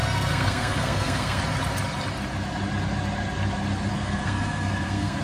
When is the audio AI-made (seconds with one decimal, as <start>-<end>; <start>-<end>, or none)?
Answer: 0.0-1.4; 3.9-5.2